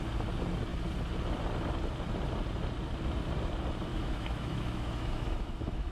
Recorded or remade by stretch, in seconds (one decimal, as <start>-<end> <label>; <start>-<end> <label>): 0.0-3.9 recorded; 3.9-5.9 remade